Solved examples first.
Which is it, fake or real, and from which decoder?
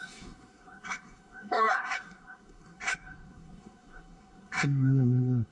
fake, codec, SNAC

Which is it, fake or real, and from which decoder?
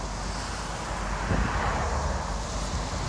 real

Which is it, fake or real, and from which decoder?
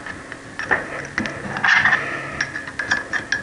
real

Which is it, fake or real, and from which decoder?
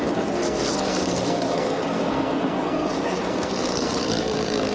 fake, codec, SNAC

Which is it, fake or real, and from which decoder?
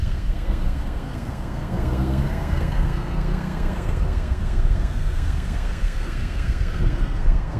fake, codec, SNAC